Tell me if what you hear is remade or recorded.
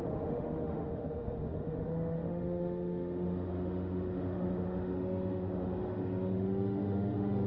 remade